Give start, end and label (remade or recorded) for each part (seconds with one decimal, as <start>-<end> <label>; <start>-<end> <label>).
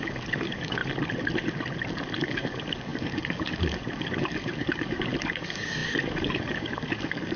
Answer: 0.0-0.8 remade; 0.8-2.2 recorded; 2.2-7.4 remade